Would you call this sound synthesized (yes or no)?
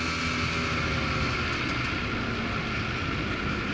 no